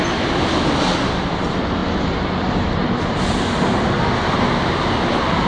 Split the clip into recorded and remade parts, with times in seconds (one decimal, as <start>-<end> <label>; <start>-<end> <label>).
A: 0.0-5.5 recorded

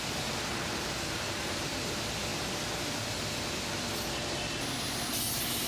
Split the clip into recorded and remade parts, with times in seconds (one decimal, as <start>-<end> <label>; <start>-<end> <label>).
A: 0.0-0.5 recorded; 0.5-1.6 remade; 1.6-5.7 recorded

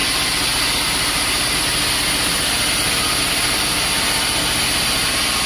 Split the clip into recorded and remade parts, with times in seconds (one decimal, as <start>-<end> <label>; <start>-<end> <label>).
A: 0.0-5.5 recorded

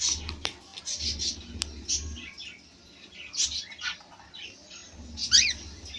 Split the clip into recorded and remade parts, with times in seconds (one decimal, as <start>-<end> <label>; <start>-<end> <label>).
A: 0.0-6.0 recorded

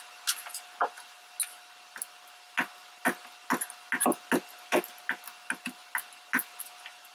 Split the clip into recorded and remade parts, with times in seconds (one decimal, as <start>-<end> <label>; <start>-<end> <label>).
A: 0.0-7.1 recorded